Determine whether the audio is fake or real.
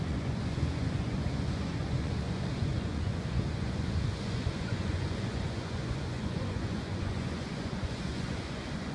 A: fake